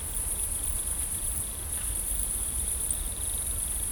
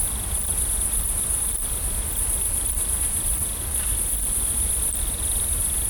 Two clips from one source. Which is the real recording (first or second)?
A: second